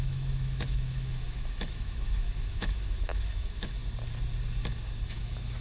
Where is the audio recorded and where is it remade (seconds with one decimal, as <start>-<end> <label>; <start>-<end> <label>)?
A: 0.0-3.8 remade; 3.8-5.1 recorded; 5.1-5.6 remade